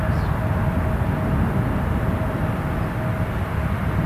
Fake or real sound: real